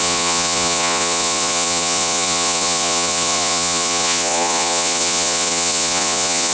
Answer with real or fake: fake